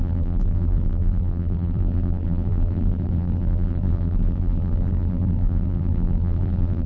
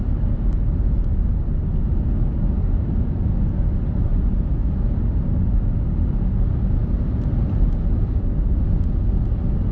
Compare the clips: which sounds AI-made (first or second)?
first